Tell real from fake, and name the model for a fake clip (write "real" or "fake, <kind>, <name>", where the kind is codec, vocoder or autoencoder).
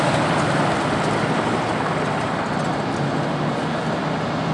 real